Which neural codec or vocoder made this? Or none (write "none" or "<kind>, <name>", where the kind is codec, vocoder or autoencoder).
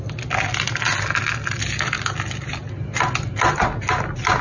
none